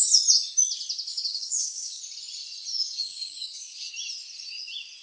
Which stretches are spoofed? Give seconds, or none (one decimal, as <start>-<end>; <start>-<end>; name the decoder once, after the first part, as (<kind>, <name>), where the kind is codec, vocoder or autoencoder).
1.1-2.0 (codec, DAC); 2.7-3.9